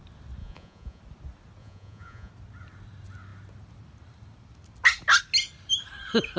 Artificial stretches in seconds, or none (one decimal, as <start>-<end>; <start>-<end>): 0.4-1.0; 1.6-2.3